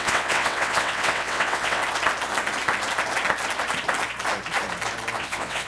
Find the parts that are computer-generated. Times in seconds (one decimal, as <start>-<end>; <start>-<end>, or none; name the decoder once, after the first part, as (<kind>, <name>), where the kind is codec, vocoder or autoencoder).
0.0-1.8 (vocoder, WaveNeXt); 5.2-5.7